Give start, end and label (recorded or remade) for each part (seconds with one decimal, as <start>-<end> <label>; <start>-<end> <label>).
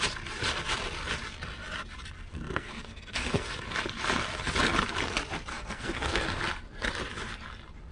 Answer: 0.0-2.3 recorded; 2.3-3.5 remade; 3.5-5.5 recorded; 5.5-6.4 remade; 6.4-7.9 recorded